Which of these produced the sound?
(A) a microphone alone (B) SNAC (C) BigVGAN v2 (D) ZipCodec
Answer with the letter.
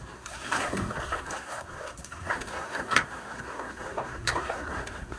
B